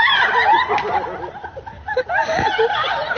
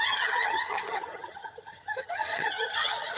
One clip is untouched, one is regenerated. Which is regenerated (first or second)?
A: second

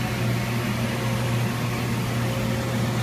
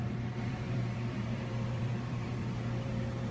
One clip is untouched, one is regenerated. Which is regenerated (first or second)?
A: second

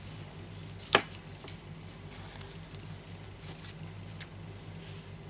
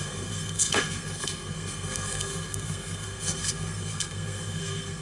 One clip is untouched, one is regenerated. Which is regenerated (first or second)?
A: second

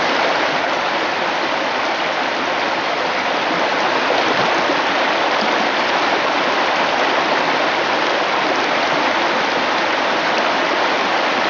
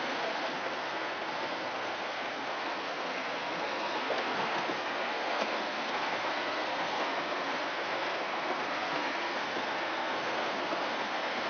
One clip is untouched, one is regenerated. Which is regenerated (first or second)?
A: second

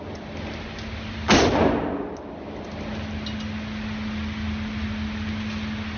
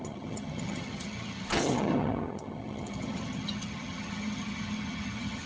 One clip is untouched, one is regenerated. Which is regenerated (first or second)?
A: second